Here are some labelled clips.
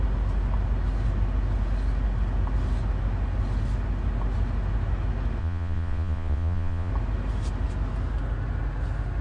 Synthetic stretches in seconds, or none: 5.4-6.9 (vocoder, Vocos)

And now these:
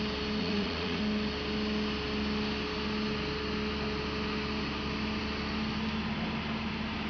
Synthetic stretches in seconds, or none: 0.4-1.0 (vocoder, Vocos)